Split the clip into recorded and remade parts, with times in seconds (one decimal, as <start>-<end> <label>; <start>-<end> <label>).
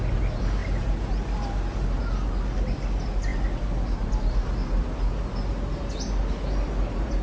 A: 0.0-7.2 recorded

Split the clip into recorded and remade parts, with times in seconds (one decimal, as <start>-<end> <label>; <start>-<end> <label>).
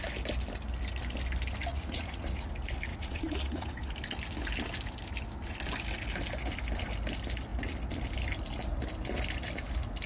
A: 0.0-1.7 recorded; 1.7-2.5 remade; 2.5-2.9 recorded; 2.9-3.9 remade; 3.9-10.1 recorded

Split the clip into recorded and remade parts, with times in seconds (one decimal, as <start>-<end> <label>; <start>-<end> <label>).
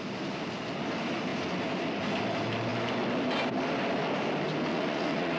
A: 0.0-4.7 recorded; 4.7-5.4 remade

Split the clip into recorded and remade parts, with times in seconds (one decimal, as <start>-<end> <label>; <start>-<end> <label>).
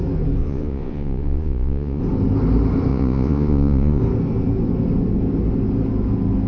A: 0.0-0.4 recorded; 0.4-2.0 remade; 2.0-2.9 recorded; 2.9-4.0 remade; 4.0-6.5 recorded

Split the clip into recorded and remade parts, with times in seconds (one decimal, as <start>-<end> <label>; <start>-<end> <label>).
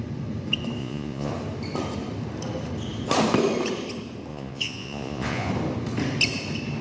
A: 0.0-0.8 recorded; 0.8-1.3 remade; 1.3-4.3 recorded; 4.3-5.5 remade; 5.5-6.8 recorded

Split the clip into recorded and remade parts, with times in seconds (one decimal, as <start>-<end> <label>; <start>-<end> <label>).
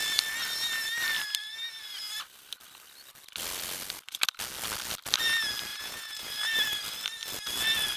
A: 0.0-5.7 recorded; 5.7-6.3 remade; 6.3-8.0 recorded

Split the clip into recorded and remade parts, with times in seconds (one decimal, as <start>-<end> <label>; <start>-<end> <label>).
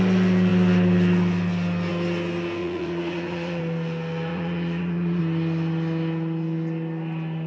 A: 0.0-2.6 recorded; 2.6-3.6 remade; 3.6-4.3 recorded; 4.3-5.2 remade; 5.2-7.5 recorded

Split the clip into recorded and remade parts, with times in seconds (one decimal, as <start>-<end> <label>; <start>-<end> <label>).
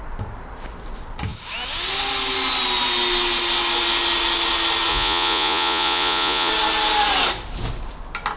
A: 0.0-4.9 recorded; 4.9-6.5 remade; 6.5-8.4 recorded